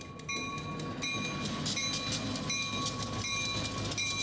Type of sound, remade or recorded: recorded